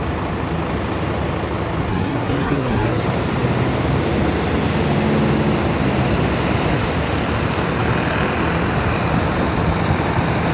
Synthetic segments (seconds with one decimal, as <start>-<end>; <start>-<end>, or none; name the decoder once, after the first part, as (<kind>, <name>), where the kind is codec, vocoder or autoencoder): 1.9-3.0 (codec, SNAC)